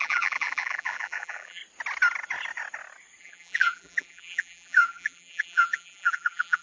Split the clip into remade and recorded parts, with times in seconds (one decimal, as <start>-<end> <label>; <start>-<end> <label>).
0.0-1.6 remade; 1.6-3.2 recorded; 3.2-6.6 remade